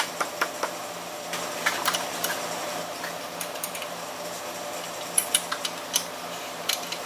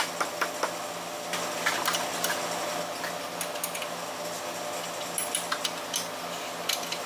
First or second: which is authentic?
second